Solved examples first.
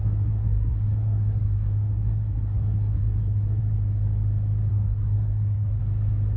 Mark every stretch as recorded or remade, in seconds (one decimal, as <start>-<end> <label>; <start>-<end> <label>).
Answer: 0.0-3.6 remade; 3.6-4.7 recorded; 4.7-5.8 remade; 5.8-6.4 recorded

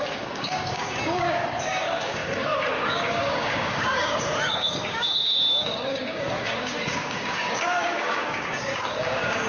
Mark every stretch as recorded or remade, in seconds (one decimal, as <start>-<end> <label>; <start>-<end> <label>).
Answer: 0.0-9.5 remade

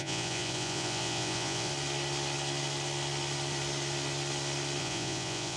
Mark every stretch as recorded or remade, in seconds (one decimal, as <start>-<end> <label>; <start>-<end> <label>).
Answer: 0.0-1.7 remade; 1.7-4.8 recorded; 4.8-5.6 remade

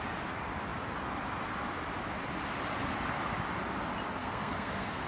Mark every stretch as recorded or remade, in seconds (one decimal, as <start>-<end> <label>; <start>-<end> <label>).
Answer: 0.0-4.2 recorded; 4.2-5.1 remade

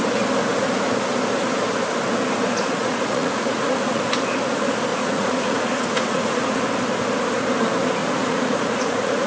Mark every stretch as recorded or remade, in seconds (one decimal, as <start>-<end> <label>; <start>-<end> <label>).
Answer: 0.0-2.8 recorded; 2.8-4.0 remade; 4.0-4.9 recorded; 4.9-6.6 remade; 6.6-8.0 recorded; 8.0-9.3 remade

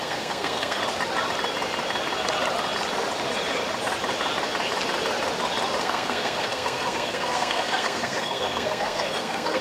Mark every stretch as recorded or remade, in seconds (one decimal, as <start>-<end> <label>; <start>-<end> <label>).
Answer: 0.0-0.8 remade; 0.8-5.8 recorded; 5.8-9.6 remade

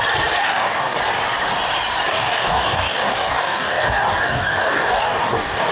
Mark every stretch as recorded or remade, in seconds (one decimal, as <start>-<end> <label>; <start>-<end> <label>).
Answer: 0.0-0.4 recorded; 0.4-1.0 remade; 1.0-2.1 recorded; 2.1-5.7 remade

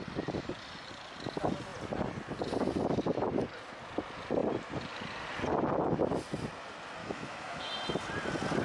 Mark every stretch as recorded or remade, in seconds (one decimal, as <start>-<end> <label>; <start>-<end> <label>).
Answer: 0.0-7.0 recorded; 7.0-7.7 remade; 7.7-8.6 recorded